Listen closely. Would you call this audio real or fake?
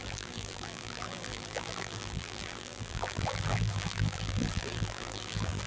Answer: fake